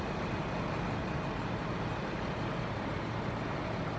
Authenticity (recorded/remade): recorded